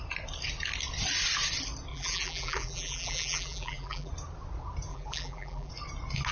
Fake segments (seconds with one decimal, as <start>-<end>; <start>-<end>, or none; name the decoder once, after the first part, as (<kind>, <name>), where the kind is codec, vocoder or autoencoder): 1.9-4.1 (vocoder, BigVGAN v2); 4.9-5.7